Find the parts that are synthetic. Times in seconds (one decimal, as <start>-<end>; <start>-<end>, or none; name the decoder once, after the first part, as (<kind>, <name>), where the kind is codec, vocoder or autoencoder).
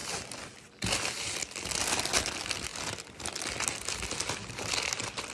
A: none